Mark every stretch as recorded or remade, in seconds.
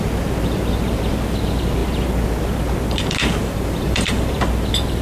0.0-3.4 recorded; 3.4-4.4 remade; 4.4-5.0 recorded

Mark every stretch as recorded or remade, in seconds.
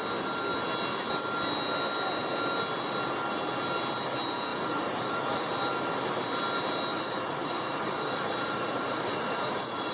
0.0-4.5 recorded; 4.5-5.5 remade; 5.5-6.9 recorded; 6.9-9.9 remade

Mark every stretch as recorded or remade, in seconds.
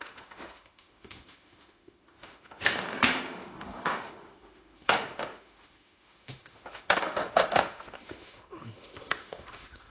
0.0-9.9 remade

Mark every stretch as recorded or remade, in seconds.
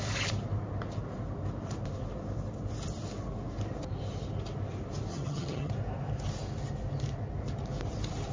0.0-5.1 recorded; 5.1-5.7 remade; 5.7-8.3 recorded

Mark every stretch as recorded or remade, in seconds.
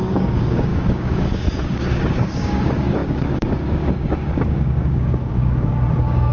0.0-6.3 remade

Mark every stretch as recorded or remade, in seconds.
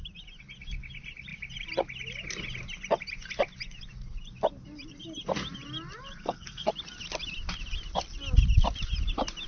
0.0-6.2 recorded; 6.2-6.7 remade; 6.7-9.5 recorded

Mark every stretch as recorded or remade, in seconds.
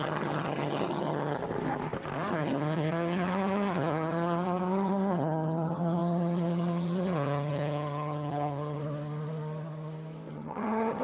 0.0-1.4 remade; 1.4-2.3 recorded; 2.3-8.8 remade; 8.8-10.3 recorded; 10.3-11.0 remade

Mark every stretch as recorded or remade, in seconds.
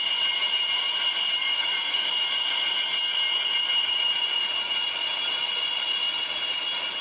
0.0-1.4 recorded; 1.4-2.1 remade; 2.1-7.0 recorded